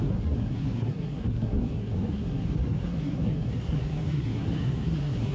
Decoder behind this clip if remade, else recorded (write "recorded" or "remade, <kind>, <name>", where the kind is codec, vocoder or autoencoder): remade, codec, SNAC